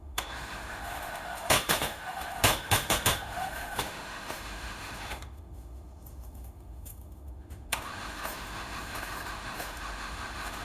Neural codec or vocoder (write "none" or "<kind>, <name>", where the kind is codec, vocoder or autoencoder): autoencoder, DAC-VAE